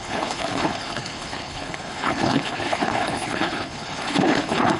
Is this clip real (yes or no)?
no